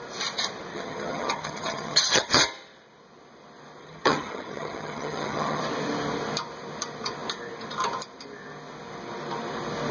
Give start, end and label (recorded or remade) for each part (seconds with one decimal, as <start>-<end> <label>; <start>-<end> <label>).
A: 0.0-0.7 recorded; 0.7-2.4 remade; 2.4-3.8 recorded; 3.8-5.6 remade; 5.6-9.9 recorded